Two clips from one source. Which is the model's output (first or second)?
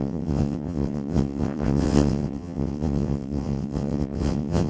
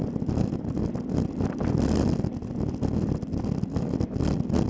first